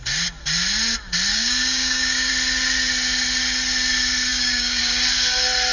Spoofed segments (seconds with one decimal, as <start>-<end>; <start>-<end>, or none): 1.3-2.3; 4.3-4.8